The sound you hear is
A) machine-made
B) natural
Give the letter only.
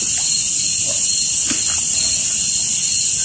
B